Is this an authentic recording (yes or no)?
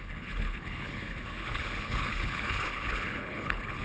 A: no